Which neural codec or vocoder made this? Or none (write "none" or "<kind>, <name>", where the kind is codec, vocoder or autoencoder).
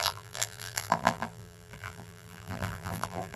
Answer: vocoder, BigVGAN v2